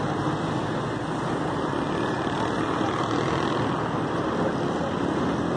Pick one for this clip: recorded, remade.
recorded